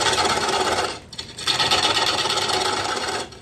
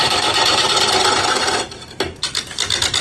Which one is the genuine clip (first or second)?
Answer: first